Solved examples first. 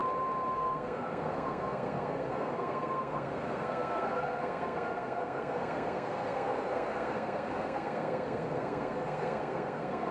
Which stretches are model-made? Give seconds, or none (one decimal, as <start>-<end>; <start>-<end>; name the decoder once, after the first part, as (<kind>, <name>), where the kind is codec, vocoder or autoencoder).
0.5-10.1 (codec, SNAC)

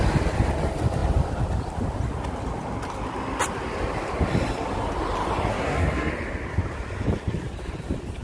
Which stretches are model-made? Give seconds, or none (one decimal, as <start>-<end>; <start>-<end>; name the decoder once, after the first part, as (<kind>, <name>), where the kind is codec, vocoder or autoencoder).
5.5-6.1 (codec, SNAC)

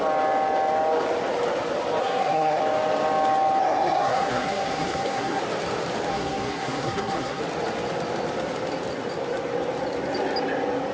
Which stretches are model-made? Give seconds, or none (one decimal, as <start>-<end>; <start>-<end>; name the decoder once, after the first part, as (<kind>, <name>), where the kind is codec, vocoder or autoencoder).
2.0-2.6 (codec, SNAC); 3.6-5.4; 6.1-7.4

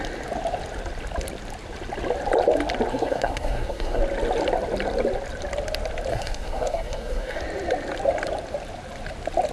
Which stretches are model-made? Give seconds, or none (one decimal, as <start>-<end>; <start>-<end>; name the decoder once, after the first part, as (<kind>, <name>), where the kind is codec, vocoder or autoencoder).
2.9-4.0 (codec, SNAC); 6.1-7.4